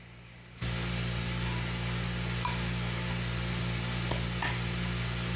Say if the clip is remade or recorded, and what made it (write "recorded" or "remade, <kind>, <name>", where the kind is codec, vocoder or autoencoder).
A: recorded